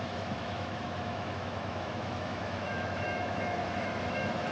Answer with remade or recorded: remade